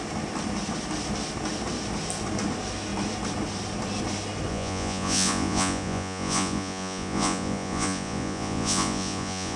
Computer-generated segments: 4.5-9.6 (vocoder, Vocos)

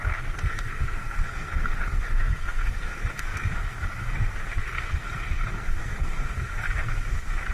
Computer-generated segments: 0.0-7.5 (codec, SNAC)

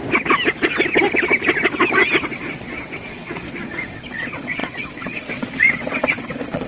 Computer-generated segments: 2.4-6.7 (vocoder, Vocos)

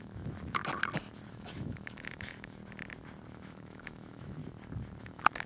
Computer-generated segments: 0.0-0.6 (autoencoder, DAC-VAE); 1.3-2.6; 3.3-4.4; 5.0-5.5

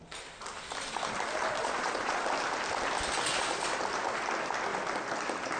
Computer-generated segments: 1.6-2.2 (vocoder, Vocos)

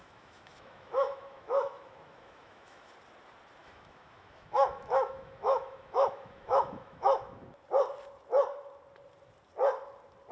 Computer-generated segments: 0.0-2.9 (autoencoder, DAC-VAE); 3.6-7.5

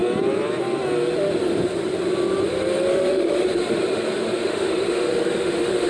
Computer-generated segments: 2.9-3.8 (autoencoder, DAC-VAE); 4.4-5.9

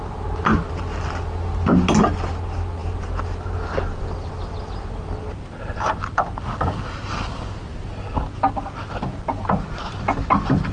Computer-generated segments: none